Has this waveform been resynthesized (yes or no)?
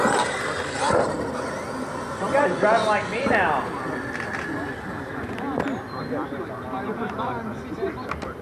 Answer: no